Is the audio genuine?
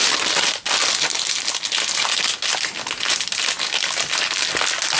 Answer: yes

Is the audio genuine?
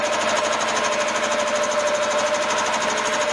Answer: yes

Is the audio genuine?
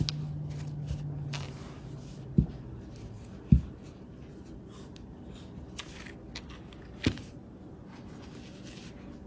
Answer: yes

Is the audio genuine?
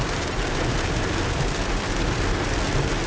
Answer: yes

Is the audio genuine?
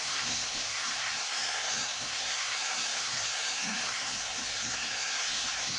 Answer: no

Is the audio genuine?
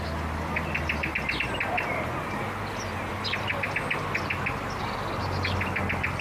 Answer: yes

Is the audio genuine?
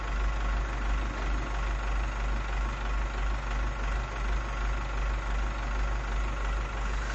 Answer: yes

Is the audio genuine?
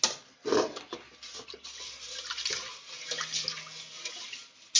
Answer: yes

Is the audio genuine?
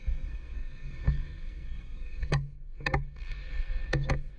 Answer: no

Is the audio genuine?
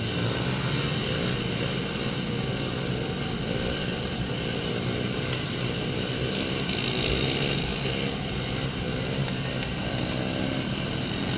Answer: yes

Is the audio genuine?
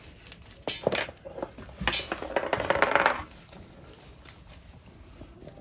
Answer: yes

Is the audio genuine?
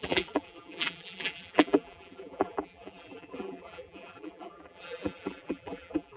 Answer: no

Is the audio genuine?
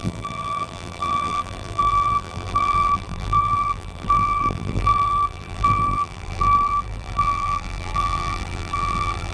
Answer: no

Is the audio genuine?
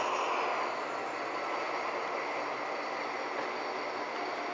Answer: yes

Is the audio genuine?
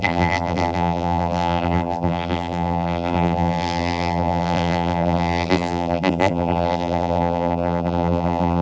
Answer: no